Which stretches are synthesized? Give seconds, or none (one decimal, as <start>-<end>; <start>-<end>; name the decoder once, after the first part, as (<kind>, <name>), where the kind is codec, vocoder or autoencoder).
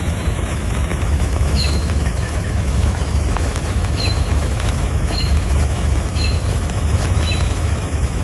0.0-8.2 (autoencoder, DAC-VAE)